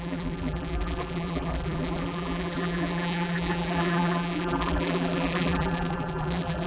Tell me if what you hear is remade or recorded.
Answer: remade